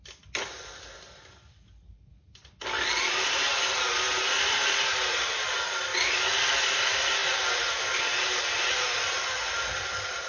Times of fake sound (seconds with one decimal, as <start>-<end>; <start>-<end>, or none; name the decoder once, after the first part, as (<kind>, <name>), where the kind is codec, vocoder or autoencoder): none